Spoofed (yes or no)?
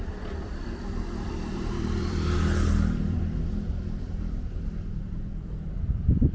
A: yes